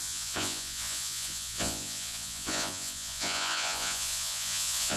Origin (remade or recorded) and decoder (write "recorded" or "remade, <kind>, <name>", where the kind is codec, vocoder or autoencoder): remade, vocoder, Vocos